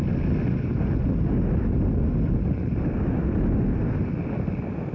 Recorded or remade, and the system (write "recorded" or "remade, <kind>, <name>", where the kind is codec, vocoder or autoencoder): recorded